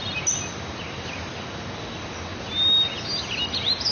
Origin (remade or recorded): recorded